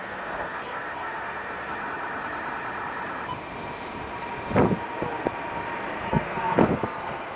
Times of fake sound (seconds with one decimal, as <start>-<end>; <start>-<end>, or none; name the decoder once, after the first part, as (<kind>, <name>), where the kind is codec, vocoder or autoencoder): 0.0-1.7 (codec, SNAC); 6.1-7.4